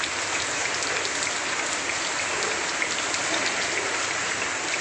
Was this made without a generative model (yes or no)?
yes